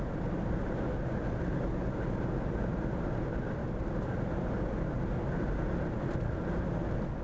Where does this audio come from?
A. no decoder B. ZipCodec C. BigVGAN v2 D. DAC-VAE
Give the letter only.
A